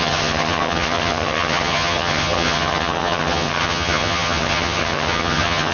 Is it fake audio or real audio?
fake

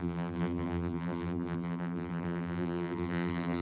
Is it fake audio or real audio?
fake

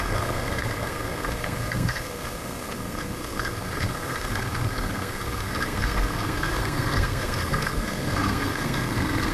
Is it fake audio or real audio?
fake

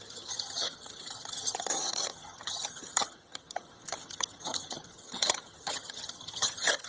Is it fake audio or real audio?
fake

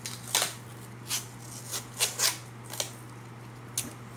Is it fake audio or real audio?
real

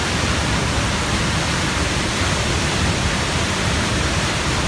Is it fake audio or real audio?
fake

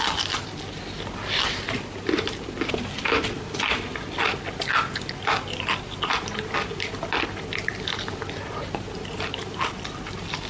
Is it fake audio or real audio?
real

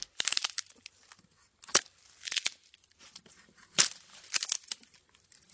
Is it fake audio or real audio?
real